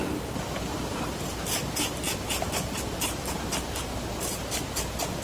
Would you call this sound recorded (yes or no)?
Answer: yes